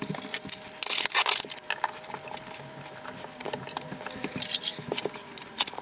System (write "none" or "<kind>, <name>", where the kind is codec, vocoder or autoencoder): none